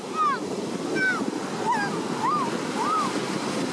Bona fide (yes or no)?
yes